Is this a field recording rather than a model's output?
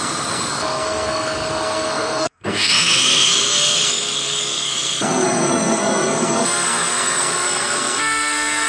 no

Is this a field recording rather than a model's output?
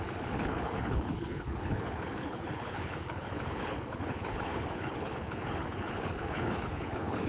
no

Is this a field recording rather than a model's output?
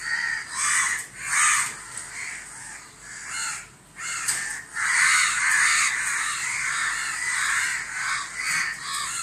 yes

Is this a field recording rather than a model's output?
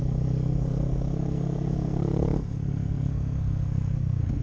no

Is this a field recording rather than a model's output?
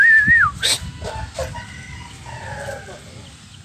yes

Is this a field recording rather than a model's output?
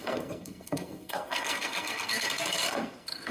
no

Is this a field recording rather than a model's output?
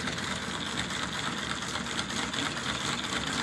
yes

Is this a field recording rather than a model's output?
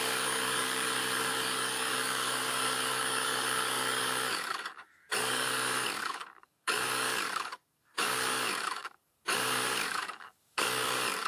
no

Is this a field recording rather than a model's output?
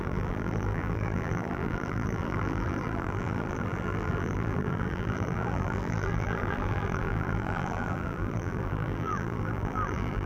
no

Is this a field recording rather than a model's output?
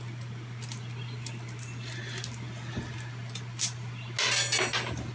yes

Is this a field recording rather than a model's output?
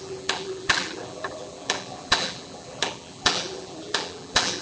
no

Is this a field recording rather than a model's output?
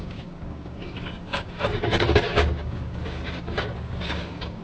no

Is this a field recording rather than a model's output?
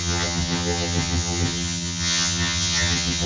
no